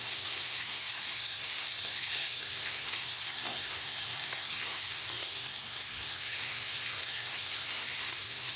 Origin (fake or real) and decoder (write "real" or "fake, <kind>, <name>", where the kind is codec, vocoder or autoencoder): fake, codec, SNAC